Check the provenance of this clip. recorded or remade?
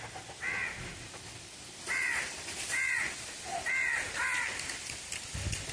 recorded